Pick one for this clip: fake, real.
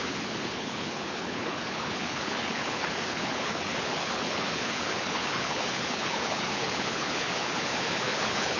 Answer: fake